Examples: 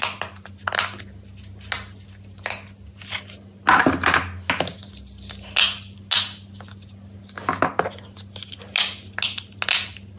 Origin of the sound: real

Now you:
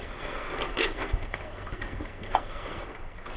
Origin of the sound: fake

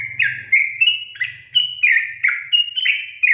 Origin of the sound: real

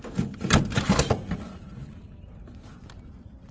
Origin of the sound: real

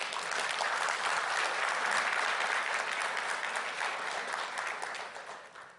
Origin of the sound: real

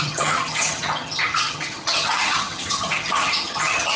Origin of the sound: fake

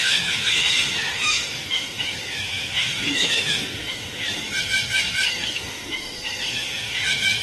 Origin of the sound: fake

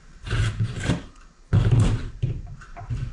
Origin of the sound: fake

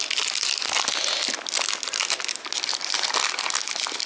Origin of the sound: real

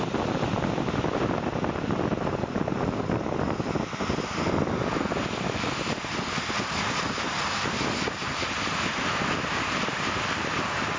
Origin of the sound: real